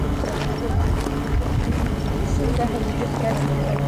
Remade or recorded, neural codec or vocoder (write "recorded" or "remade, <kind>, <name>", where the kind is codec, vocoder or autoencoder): recorded